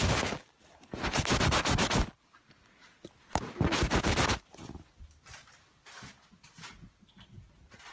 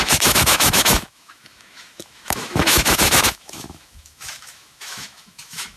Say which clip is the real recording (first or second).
first